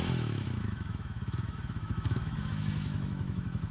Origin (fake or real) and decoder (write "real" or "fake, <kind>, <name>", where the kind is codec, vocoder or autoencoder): fake, autoencoder, DAC-VAE